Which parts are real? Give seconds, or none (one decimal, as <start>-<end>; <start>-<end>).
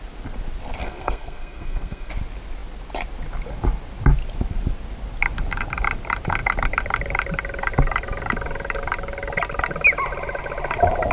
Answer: 0.0-0.8; 2.1-11.1